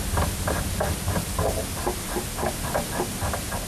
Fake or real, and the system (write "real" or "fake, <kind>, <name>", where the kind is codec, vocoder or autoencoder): real